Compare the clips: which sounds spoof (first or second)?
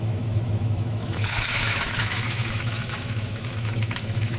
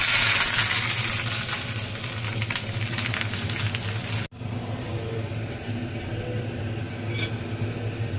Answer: first